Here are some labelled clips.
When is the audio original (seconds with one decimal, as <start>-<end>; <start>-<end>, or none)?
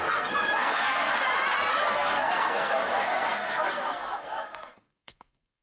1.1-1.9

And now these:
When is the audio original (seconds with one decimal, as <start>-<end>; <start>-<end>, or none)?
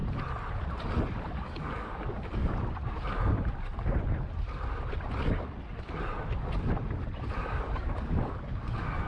0.0-1.2; 2.4-7.3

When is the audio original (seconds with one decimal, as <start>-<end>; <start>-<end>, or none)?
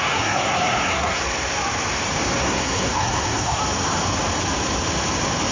1.2-2.4; 3.6-5.5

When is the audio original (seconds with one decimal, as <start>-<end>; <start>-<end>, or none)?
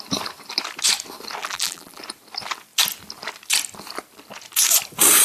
0.0-1.4; 2.0-5.2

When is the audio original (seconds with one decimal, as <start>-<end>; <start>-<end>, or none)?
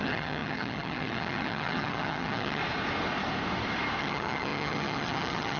2.6-4.0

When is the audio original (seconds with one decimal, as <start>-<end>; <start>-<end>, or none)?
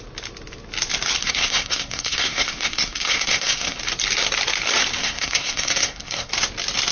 0.0-1.2; 3.8-5.0; 6.3-6.9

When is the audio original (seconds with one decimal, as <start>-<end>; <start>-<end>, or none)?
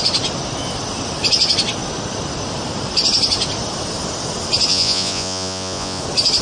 0.0-4.7; 6.0-6.4